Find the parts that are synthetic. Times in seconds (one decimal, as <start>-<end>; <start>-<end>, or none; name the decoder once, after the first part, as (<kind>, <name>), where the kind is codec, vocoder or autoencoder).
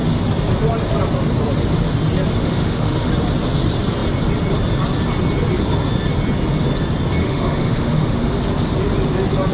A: 2.3-3.1 (autoencoder, DAC-VAE); 7.2-8.3